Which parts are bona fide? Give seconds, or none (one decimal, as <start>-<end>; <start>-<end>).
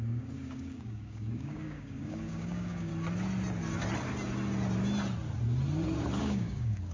2.9-6.2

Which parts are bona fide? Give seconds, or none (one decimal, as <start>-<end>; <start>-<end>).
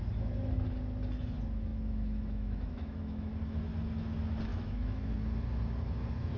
0.0-1.7; 3.3-4.5; 5.1-6.4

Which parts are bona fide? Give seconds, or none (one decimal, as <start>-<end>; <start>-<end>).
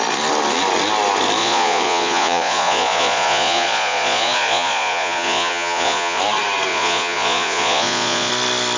0.0-1.4; 6.2-6.7; 8.3-8.8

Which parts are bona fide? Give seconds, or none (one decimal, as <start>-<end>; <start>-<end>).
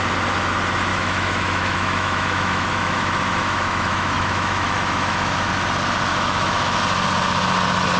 0.0-0.9; 5.5-6.1; 6.8-8.0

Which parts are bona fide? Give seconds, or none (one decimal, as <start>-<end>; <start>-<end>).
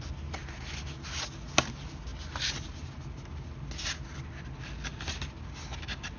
0.0-6.2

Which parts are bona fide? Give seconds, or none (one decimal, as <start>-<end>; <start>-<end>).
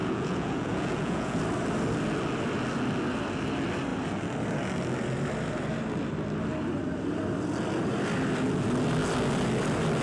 1.4-10.0